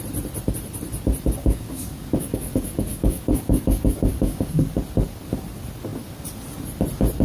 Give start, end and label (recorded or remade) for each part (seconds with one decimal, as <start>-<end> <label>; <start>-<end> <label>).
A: 0.0-1.4 recorded; 1.4-4.7 remade; 4.7-7.2 recorded